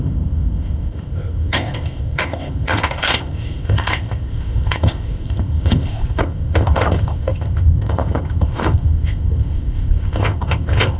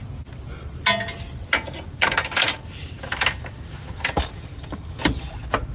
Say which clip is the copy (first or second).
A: first